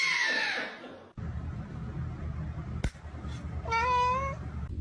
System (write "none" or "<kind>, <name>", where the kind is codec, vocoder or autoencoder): none